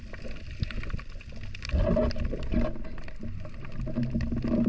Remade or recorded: recorded